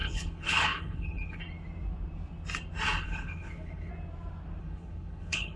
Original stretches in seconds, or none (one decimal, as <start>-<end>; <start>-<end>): 1.4-3.0; 3.9-4.6